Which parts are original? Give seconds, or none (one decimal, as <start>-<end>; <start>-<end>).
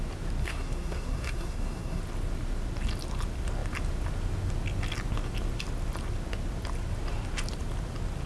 0.0-0.4; 2.0-8.3